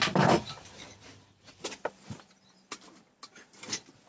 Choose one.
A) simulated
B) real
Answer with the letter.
B